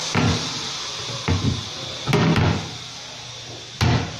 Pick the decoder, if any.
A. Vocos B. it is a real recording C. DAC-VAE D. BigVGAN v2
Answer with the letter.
B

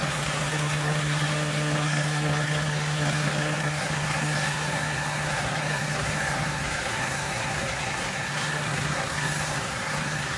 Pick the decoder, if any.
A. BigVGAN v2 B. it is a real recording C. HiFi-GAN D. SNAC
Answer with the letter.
D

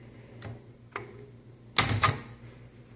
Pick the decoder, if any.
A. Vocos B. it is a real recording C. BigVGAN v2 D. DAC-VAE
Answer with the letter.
B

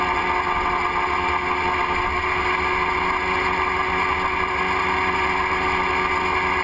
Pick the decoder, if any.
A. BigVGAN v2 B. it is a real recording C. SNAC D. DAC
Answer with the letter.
B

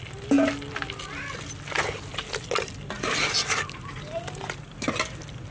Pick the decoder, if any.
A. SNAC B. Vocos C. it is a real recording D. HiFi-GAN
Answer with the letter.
C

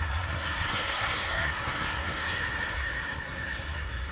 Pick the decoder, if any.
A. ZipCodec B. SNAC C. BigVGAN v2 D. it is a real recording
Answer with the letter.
B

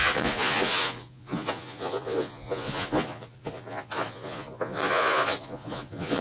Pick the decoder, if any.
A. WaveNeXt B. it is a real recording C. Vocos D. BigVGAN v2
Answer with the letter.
C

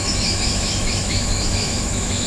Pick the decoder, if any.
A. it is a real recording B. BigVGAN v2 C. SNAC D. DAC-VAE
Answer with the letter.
D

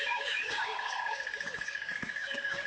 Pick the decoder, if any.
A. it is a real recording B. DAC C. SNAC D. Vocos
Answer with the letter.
B